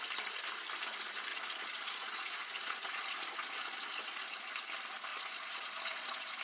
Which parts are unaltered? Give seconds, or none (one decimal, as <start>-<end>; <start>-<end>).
0.0-1.3; 4.5-5.1